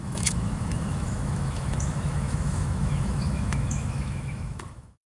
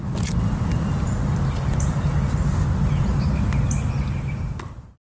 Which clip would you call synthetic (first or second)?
first